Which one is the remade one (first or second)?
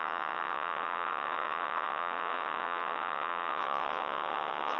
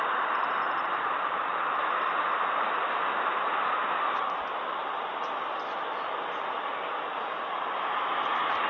first